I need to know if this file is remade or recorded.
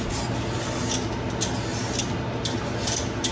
recorded